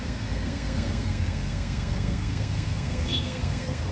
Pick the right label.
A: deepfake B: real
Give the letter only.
A